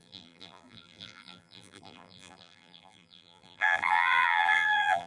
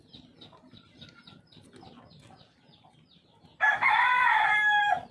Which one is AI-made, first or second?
first